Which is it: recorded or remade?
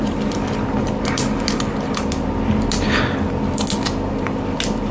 remade